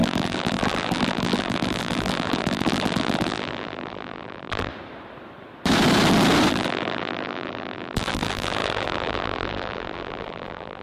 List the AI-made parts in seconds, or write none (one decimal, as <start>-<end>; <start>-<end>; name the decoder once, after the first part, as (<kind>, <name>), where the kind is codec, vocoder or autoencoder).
0.0-4.7 (vocoder, BigVGAN v2); 6.5-10.8